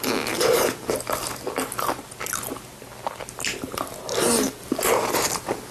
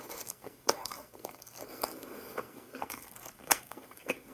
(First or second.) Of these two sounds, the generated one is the second